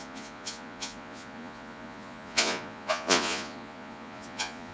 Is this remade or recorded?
remade